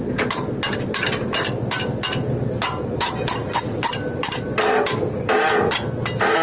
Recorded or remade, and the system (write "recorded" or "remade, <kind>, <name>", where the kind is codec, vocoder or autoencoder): recorded